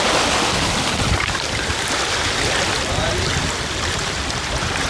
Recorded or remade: recorded